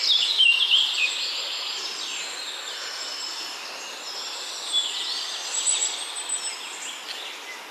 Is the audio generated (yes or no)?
no